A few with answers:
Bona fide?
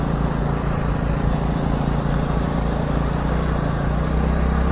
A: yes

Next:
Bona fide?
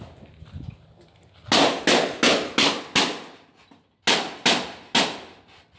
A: yes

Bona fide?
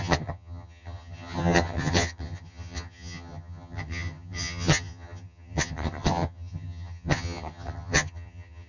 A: no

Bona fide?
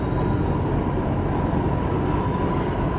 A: yes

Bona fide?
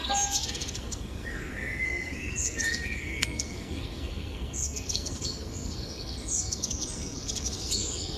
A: no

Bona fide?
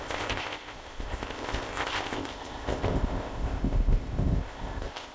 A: no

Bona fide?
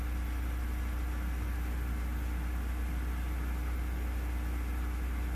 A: yes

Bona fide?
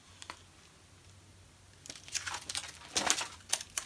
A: yes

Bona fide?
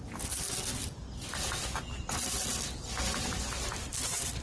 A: yes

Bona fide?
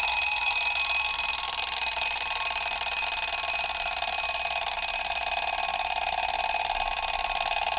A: yes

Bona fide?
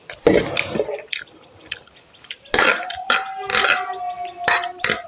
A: yes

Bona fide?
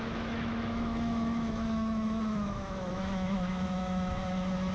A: no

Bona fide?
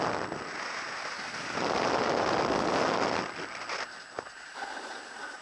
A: yes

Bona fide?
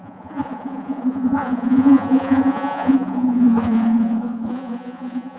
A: no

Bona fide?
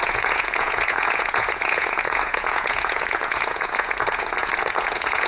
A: no